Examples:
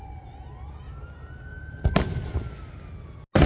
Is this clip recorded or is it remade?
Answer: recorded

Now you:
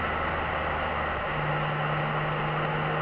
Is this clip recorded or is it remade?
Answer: recorded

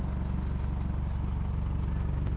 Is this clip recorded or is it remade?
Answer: recorded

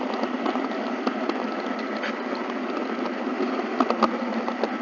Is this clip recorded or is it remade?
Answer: recorded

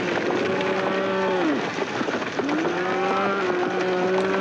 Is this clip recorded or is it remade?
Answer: recorded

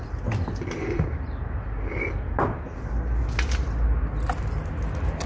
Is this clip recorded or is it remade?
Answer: recorded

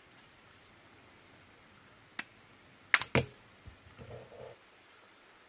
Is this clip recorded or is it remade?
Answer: recorded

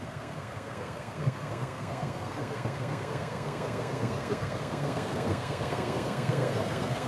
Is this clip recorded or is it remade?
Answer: remade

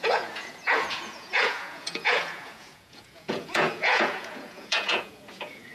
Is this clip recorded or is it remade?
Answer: remade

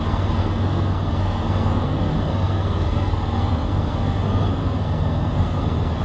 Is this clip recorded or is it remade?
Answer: remade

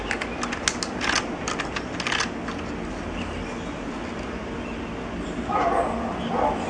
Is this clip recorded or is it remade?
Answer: recorded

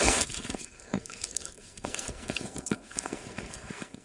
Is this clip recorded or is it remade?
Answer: remade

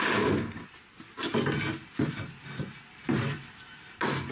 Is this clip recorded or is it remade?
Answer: recorded